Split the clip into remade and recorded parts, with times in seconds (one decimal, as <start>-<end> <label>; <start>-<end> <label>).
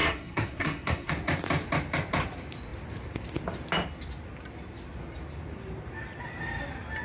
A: 0.0-1.1 remade; 1.1-7.0 recorded